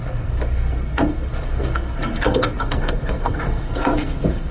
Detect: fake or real fake